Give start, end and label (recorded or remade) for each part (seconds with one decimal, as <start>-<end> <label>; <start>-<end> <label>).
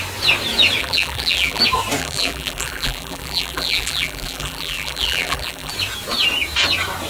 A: 0.0-0.8 recorded; 0.8-1.6 remade; 1.6-2.0 recorded; 2.0-5.7 remade; 5.7-7.1 recorded